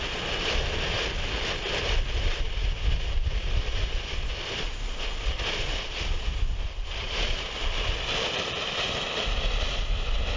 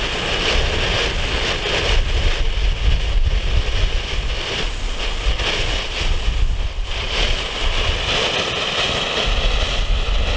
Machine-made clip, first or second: first